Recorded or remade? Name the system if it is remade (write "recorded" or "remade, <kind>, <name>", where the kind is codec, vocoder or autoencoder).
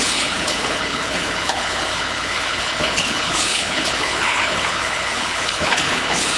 remade, codec, HILCodec